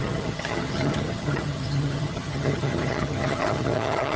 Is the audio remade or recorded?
remade